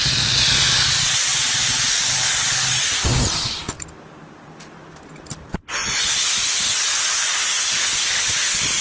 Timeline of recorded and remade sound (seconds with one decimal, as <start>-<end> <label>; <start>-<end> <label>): 0.0-8.8 recorded